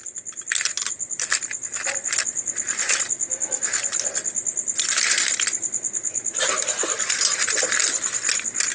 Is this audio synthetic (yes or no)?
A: no